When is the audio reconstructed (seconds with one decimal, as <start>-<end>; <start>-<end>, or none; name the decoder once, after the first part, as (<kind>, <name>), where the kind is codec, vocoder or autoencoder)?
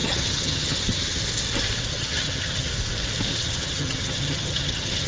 0.0-1.2 (vocoder, HiFi-GAN); 1.9-2.7; 3.3-5.1